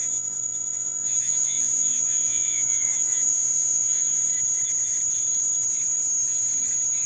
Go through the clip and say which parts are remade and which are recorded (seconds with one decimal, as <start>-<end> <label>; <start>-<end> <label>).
0.0-4.3 remade; 4.3-7.1 recorded